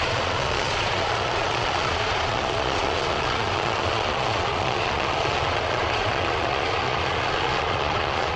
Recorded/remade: remade